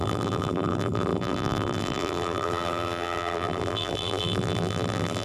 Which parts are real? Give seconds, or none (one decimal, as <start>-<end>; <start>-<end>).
none